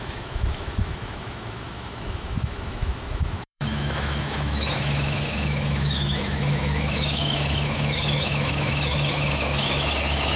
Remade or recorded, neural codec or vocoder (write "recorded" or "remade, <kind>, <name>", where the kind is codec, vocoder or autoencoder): remade, autoencoder, DAC-VAE